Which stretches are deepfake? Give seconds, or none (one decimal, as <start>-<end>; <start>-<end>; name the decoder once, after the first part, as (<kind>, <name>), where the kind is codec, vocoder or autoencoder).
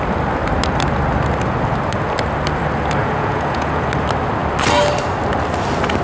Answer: 3.0-3.9 (vocoder, Vocos)